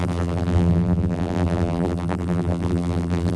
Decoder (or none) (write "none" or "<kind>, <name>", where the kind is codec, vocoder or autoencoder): vocoder, BigVGAN v2